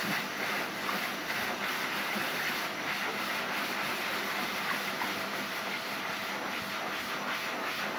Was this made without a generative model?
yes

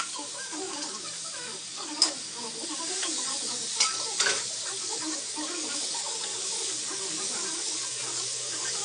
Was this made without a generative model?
no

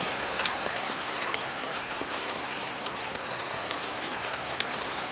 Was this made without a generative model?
no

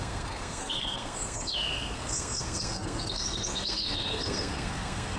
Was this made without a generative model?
no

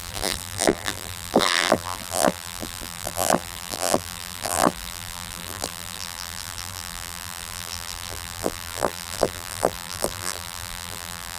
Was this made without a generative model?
no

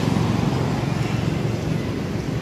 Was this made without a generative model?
yes